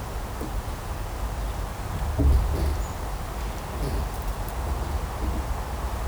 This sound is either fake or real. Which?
real